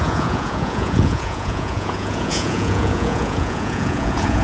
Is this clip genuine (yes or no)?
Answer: no